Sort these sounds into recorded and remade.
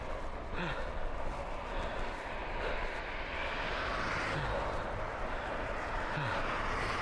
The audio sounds recorded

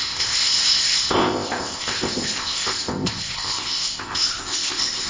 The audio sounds remade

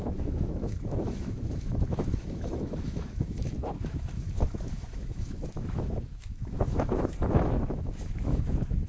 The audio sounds remade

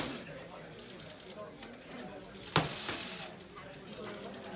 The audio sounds recorded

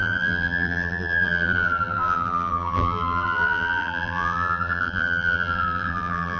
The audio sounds remade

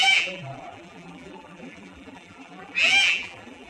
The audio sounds remade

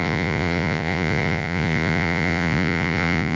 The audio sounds remade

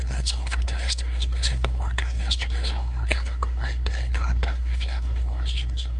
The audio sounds remade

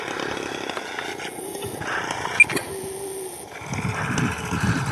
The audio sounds recorded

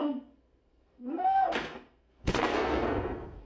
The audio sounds remade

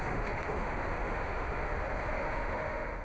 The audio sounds remade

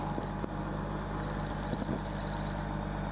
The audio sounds recorded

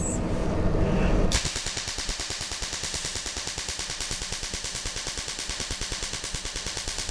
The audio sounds recorded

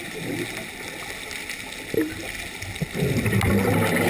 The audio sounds recorded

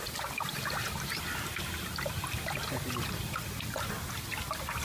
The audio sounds recorded